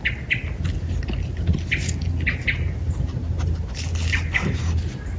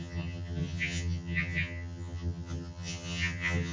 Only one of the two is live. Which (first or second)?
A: first